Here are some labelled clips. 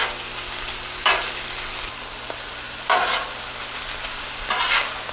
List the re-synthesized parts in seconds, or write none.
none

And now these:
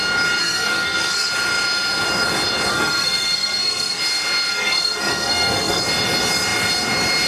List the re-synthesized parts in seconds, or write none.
0.4-1.3 (codec, SNAC); 2.7-4.0; 4.5-5.8

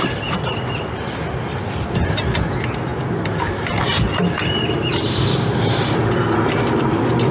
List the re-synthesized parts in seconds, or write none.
none

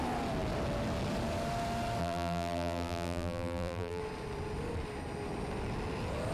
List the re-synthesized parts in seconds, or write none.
2.0-4.0 (vocoder, BigVGAN v2)

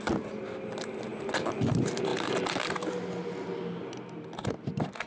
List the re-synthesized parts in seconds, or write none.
none

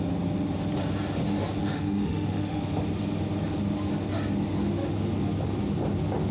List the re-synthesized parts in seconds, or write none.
1.6-2.6 (autoencoder, DAC-VAE)

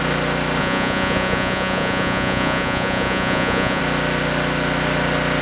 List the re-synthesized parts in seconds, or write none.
0.6-3.8 (vocoder, Vocos)